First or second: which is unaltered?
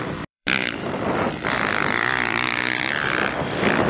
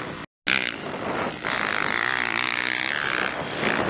second